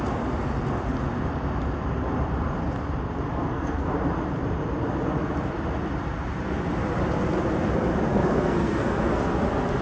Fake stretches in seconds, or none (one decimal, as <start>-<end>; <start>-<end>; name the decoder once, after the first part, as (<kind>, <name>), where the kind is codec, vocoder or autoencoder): 3.3-3.9 (codec, SNAC); 8.1-9.2